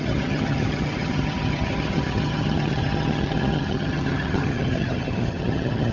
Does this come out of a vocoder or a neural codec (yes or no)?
yes